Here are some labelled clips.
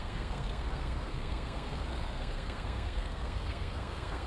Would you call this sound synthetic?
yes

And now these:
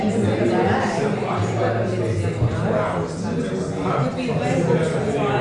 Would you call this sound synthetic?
no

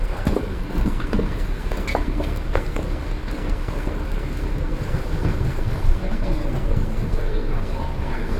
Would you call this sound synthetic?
yes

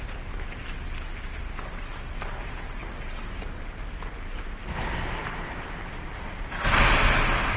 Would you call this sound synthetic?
no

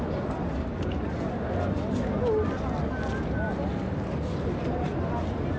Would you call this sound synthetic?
no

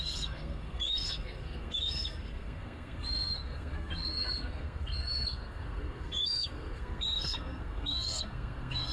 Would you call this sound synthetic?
yes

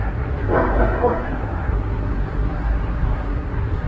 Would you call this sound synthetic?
yes